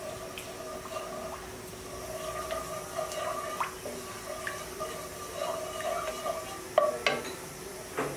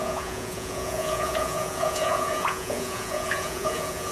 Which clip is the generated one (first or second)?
second